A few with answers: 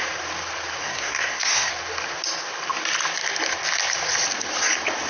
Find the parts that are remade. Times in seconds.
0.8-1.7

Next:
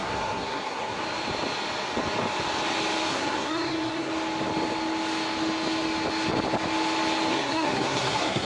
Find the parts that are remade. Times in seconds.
0.0-1.0; 3.1-4.1; 7.3-8.4

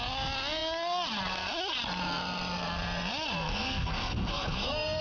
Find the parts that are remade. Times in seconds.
3.5-5.0